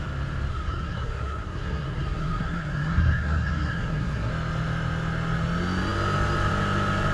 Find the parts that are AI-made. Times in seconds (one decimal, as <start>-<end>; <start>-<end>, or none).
0.5-4.3